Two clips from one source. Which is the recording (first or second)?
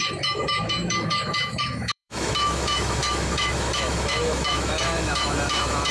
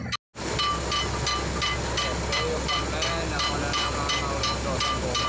second